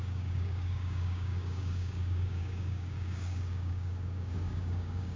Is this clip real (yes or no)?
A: no